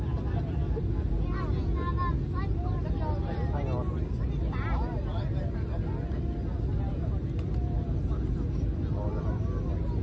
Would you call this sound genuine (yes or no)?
yes